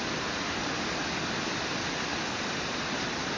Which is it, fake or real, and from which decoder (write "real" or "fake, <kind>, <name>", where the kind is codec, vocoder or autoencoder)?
real